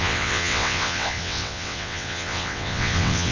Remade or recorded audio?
remade